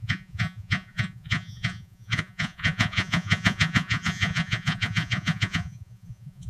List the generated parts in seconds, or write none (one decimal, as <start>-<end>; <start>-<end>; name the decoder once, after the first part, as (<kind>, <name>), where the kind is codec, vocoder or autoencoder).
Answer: 0.0-6.5 (vocoder, Vocos)